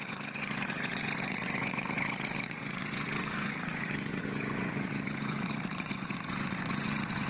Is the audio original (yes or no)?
no